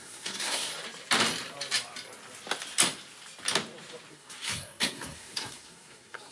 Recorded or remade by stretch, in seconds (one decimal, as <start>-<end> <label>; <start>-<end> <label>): 0.0-0.7 remade; 0.7-4.1 recorded; 4.1-6.3 remade